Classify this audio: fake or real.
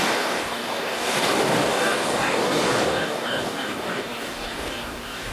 fake